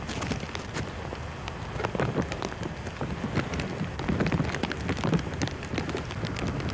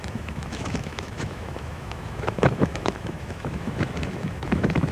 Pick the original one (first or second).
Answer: first